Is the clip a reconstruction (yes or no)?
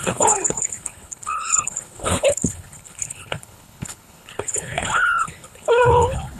yes